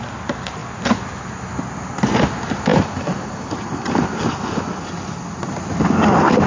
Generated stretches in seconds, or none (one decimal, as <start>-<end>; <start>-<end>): none